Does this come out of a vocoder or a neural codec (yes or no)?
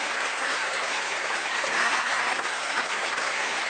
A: yes